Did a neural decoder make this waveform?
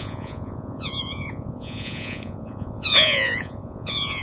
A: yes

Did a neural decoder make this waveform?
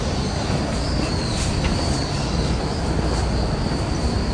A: no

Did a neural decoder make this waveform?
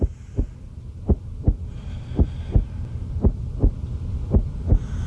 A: no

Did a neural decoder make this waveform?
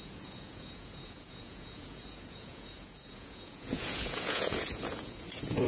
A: yes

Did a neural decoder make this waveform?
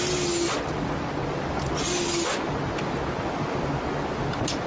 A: no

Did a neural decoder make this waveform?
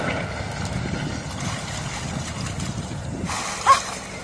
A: no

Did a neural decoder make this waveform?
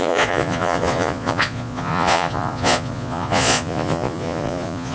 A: yes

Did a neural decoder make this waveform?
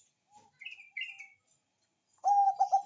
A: no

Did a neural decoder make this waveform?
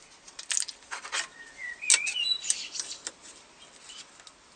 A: no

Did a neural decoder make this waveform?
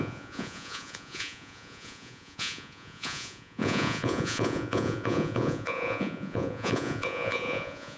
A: yes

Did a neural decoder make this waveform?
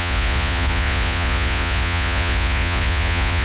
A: yes